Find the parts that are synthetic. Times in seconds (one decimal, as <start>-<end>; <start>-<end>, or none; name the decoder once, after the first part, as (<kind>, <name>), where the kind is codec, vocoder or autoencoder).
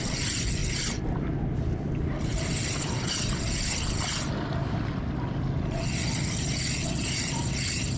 none